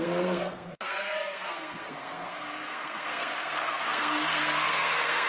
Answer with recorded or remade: remade